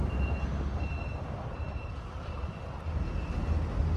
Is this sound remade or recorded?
recorded